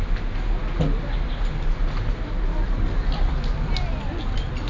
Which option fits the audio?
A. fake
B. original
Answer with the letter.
B